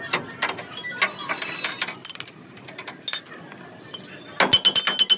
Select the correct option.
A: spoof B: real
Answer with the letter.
B